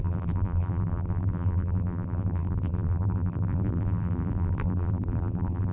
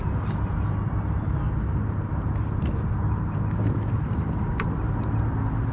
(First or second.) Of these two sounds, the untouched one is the second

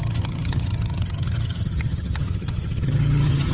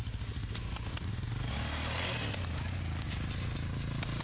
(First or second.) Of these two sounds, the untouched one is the second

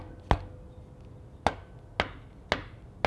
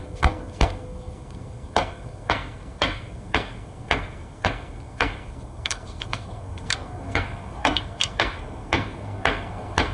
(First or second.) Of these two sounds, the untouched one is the first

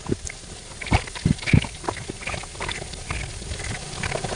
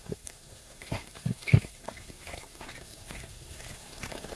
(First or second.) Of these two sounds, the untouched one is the first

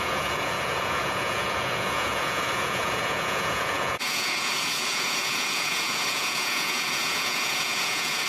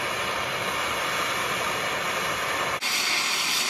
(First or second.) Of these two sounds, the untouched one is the second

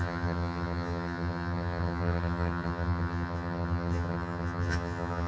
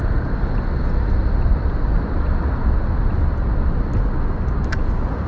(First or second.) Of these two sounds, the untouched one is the second